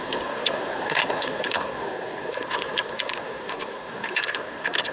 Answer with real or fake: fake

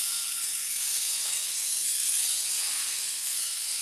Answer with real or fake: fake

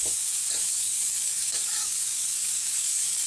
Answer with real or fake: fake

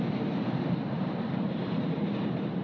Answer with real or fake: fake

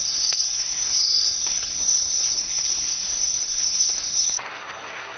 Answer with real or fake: fake